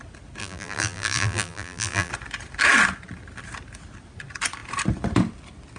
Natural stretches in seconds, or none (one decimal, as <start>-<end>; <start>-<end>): 0.0-0.4; 2.1-5.8